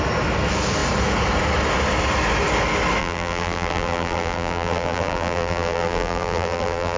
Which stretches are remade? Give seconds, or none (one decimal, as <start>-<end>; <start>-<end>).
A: 3.0-7.0